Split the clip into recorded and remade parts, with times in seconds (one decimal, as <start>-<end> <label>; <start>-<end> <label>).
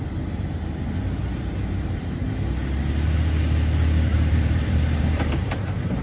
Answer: 0.0-1.3 recorded; 1.3-2.4 remade; 2.4-4.1 recorded; 4.1-6.0 remade